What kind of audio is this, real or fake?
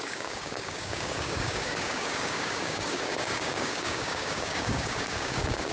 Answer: fake